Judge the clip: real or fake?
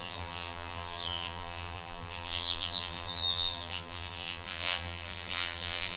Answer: fake